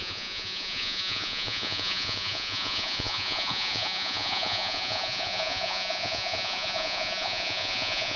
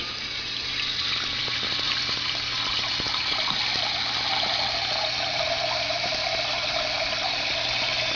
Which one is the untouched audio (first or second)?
second